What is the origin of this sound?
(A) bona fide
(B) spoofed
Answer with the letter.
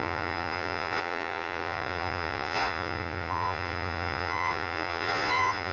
B